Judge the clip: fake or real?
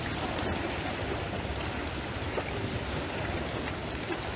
fake